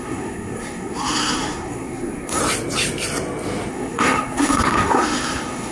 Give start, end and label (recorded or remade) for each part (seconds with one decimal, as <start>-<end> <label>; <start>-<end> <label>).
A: 0.0-2.4 remade; 2.4-3.7 recorded; 3.7-5.7 remade

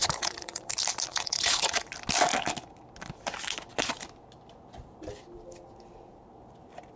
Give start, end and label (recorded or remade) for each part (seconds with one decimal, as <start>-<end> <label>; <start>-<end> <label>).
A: 0.0-0.7 remade; 0.7-1.1 recorded; 1.1-1.9 remade; 1.9-7.0 recorded